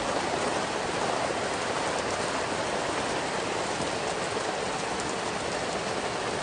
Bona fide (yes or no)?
yes